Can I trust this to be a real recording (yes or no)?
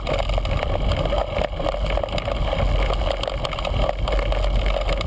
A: yes